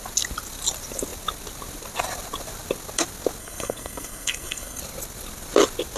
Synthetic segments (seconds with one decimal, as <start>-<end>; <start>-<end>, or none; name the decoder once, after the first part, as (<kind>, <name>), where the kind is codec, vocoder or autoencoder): 3.4-4.8 (codec, SNAC)

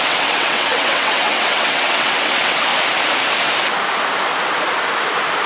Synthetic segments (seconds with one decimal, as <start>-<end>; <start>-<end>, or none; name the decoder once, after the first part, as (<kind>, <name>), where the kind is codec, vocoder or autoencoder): 0.0-2.7 (vocoder, WaveNeXt)

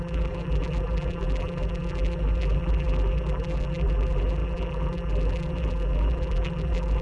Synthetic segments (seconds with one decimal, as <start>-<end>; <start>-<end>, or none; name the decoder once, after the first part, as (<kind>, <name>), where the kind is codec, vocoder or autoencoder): 0.0-7.0 (vocoder, BigVGAN v2)

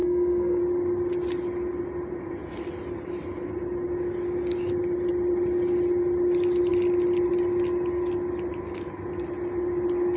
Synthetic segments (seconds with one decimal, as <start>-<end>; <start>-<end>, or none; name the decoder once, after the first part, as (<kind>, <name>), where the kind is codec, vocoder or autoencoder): 0.0-0.6 (codec, SNAC)

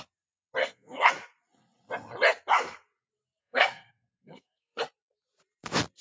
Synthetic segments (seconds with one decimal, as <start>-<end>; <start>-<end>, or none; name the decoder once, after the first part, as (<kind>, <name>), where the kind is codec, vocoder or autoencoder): 0.6-1.1 (codec, SNAC); 3.4-4.8